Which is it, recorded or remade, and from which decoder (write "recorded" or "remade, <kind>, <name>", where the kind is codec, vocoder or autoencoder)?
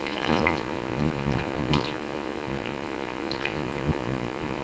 remade, vocoder, Vocos